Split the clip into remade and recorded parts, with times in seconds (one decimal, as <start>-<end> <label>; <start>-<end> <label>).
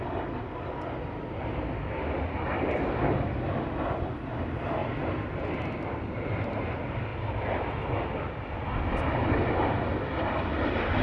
0.0-11.0 recorded